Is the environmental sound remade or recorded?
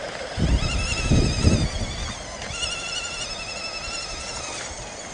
recorded